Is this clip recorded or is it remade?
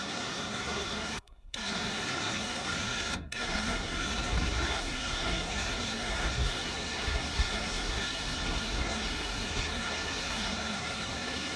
remade